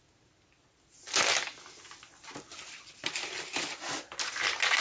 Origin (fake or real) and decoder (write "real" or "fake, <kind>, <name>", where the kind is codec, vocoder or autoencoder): real